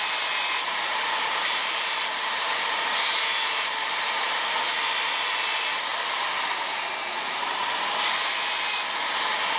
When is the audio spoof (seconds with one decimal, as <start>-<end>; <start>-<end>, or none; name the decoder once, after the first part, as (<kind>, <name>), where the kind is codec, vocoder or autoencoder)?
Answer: 0.7-4.8 (vocoder, BigVGAN v2)